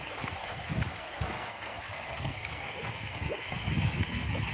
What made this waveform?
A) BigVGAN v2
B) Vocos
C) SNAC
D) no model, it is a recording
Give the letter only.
C